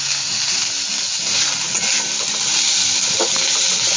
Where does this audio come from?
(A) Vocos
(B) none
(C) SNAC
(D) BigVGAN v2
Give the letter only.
B